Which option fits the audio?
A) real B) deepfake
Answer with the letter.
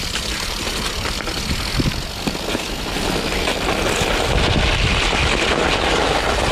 A